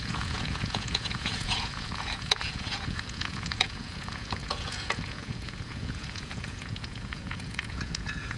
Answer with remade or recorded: remade